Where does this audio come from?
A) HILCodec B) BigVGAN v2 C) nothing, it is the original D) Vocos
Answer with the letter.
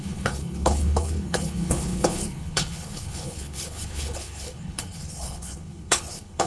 A